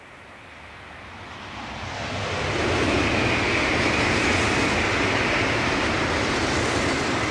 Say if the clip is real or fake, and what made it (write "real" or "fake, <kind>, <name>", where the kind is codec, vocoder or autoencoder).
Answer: real